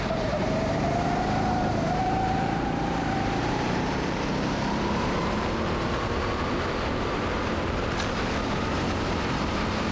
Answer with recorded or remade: remade